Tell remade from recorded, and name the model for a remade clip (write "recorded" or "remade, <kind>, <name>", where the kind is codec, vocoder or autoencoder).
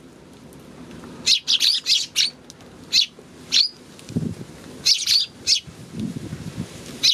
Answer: recorded